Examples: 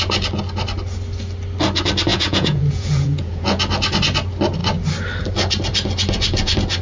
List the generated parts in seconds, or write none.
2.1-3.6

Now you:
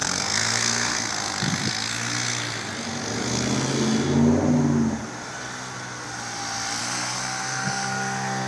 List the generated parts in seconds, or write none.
0.0-1.1; 6.8-8.5

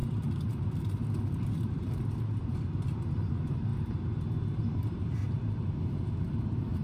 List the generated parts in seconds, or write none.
0.0-3.7; 4.6-5.2; 6.2-6.8

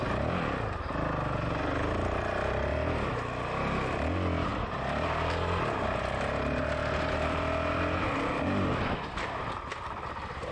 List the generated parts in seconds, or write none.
none

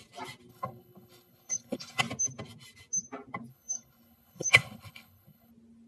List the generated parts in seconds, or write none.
0.5-2.0; 3.5-5.5

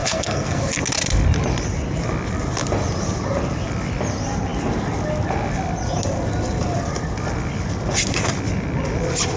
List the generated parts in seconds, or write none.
0.0-0.6

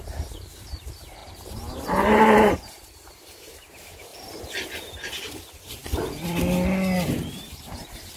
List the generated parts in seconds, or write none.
0.0-4.1; 5.2-5.8; 7.4-8.2

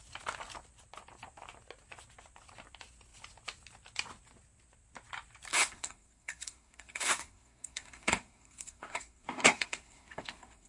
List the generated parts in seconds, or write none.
5.5-10.7